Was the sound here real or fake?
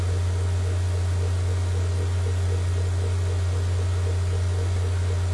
real